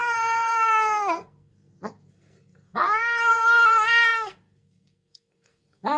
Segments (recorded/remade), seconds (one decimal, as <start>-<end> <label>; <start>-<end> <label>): 0.0-6.0 remade